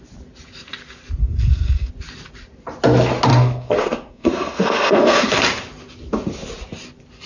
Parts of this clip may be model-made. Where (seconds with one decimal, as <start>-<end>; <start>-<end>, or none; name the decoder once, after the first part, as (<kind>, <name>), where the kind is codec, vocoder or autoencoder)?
1.2-1.9 (codec, SNAC); 3.3-5.4